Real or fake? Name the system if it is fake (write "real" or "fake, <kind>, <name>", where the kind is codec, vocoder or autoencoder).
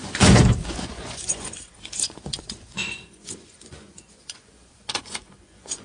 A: fake, vocoder, Vocos